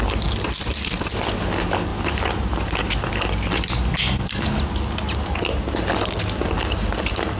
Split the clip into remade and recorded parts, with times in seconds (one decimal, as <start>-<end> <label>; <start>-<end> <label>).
0.0-7.4 recorded